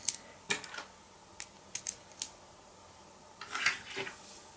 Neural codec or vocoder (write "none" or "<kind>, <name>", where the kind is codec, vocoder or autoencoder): none